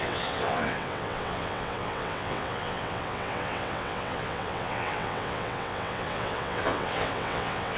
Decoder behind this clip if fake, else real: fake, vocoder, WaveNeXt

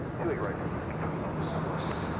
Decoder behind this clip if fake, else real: real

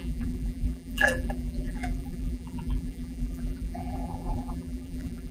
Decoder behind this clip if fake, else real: fake, vocoder, BigVGAN v2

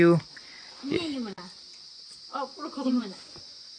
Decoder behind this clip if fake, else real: fake, vocoder, Vocos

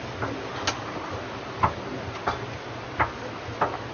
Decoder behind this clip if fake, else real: real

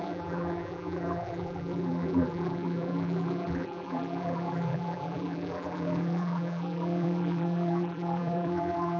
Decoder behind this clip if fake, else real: fake, vocoder, BigVGAN v2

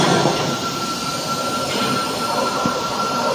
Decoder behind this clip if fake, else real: real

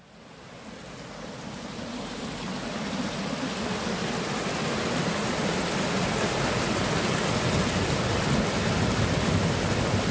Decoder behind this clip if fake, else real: real